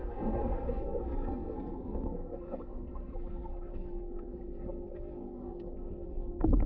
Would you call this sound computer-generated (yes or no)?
yes